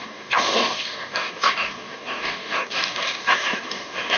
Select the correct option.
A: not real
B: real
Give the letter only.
A